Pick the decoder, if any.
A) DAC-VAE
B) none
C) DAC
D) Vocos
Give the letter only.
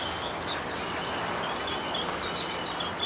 B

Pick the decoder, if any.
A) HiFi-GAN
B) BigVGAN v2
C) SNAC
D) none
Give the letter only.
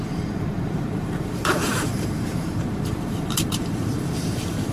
B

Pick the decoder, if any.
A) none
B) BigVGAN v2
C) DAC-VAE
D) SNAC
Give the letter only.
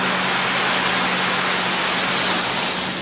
A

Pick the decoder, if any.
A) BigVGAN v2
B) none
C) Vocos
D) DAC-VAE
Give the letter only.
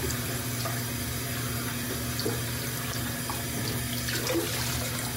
B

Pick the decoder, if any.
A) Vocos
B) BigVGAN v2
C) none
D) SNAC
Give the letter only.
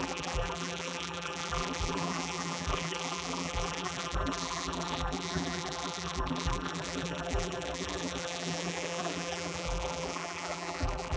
B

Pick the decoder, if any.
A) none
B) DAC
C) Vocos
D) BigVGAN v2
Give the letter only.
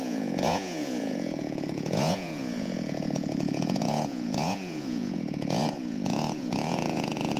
C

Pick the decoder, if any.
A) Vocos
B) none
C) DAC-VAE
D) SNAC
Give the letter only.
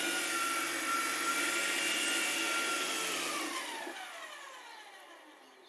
B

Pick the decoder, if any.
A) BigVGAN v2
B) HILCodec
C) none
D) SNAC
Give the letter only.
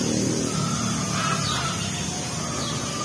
C